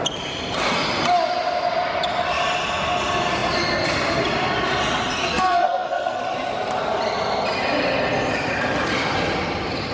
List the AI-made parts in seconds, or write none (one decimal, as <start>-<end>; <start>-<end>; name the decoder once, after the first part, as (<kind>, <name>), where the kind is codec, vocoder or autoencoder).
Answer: 5.2-6.2 (codec, SNAC)